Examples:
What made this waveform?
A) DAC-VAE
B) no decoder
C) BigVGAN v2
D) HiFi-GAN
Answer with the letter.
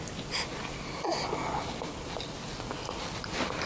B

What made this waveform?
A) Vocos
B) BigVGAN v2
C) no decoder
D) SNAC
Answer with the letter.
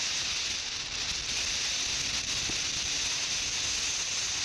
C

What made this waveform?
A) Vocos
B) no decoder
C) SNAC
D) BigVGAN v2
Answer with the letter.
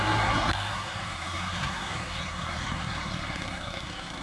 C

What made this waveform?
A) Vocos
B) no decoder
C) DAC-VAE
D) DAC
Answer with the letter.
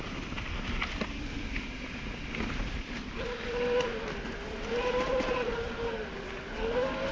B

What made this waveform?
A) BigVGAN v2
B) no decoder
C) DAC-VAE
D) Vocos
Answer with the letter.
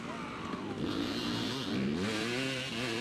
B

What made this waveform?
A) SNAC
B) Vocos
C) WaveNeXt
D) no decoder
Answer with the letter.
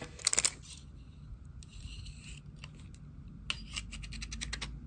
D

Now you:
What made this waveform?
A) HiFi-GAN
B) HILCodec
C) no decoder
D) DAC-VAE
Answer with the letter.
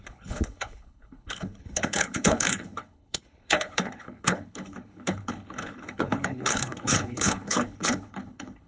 B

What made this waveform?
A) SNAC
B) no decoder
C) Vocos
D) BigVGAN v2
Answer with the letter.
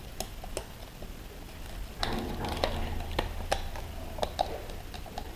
B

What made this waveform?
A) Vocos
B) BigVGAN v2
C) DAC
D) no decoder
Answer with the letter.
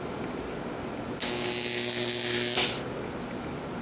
D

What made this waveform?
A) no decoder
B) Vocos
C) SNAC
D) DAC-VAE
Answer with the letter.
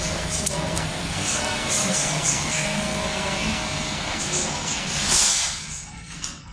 C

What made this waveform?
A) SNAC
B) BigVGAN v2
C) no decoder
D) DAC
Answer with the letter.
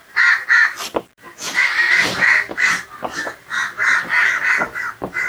B